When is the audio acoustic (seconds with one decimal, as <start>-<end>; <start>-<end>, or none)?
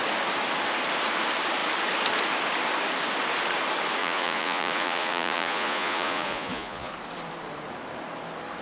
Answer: 0.0-4.0; 6.9-8.6